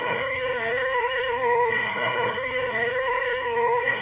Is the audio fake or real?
fake